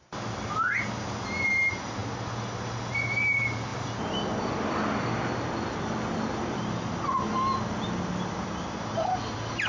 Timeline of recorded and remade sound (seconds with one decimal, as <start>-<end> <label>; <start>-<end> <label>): 0.0-9.7 recorded